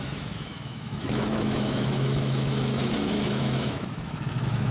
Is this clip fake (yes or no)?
yes